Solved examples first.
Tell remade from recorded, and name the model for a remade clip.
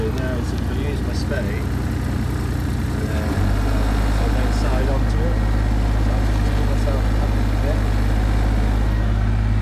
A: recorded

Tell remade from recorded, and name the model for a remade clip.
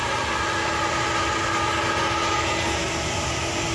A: recorded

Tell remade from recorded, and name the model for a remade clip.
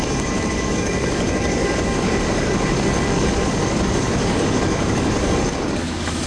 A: remade, codec, DAC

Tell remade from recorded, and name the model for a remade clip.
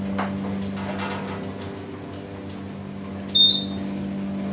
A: recorded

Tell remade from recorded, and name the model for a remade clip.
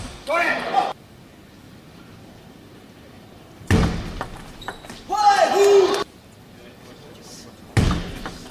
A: recorded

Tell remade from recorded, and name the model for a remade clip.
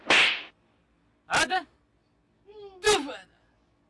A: recorded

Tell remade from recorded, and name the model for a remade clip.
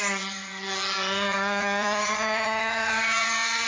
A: remade, vocoder, HiFi-GAN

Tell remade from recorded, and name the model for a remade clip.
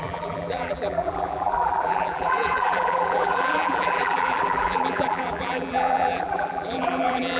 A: remade, vocoder, BigVGAN v2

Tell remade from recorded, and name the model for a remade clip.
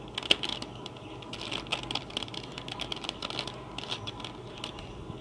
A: recorded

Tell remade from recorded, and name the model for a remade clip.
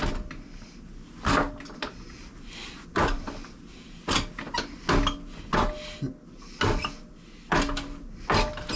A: recorded